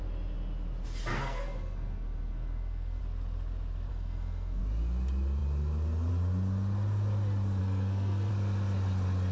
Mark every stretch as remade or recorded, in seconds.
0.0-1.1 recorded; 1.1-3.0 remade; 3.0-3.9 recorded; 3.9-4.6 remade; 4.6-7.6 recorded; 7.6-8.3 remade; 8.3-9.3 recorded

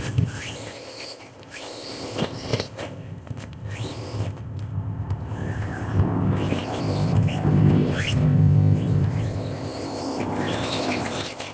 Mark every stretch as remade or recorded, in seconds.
0.0-11.5 remade

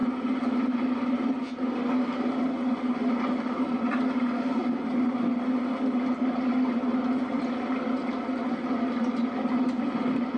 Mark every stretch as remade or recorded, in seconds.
0.0-10.4 recorded

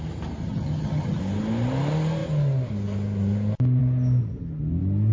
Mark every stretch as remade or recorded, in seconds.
0.0-0.4 recorded; 0.4-1.2 remade; 1.2-5.1 recorded